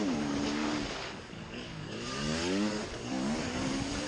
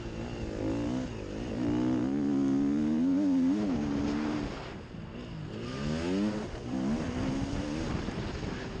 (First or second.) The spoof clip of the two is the first